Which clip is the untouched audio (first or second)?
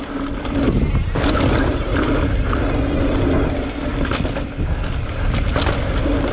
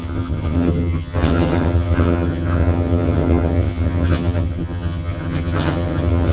first